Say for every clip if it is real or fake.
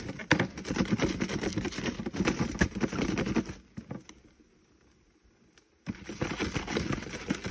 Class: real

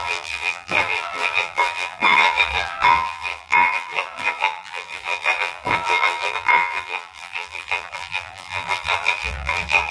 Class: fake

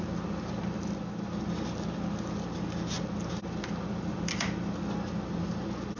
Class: real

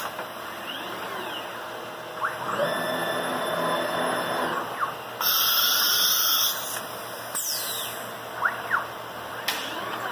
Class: real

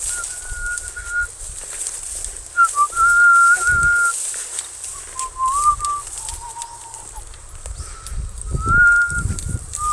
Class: real